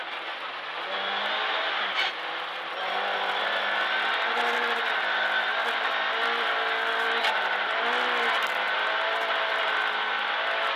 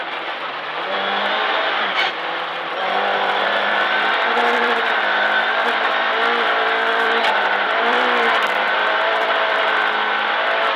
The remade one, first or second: second